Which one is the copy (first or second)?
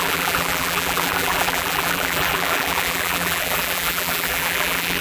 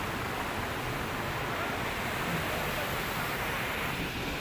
first